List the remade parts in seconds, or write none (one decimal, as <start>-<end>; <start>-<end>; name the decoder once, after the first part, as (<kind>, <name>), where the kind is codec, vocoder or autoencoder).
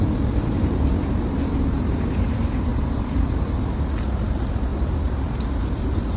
2.7-3.4 (vocoder, BigVGAN v2)